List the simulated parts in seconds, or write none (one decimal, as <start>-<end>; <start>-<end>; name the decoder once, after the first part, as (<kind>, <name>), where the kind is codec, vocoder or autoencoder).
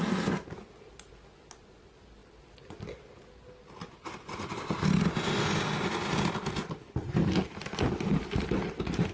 none